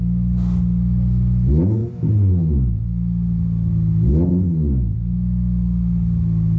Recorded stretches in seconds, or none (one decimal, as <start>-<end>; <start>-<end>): 0.0-6.6